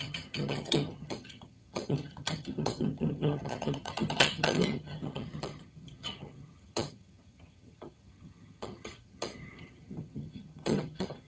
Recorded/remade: remade